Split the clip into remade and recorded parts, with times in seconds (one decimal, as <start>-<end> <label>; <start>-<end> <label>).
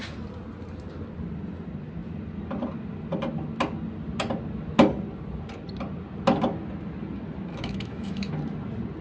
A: 0.0-7.5 recorded; 7.5-8.3 remade; 8.3-9.0 recorded